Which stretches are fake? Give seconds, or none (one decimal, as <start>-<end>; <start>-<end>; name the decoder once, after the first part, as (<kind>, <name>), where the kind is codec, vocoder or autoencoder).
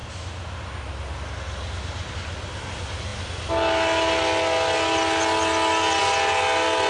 none